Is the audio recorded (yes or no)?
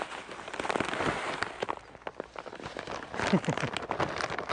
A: yes